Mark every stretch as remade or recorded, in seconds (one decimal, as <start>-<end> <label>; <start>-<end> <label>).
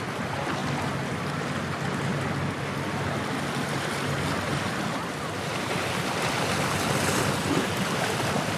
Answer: 0.0-8.6 recorded